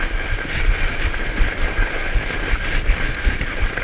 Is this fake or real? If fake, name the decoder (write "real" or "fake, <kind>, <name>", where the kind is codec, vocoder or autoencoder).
real